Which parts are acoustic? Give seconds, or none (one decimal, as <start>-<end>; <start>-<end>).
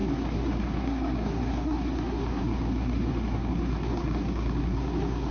none